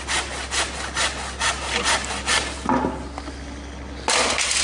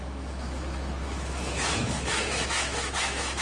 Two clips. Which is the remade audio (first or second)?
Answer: second